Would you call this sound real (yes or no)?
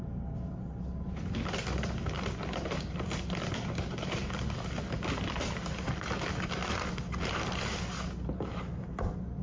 yes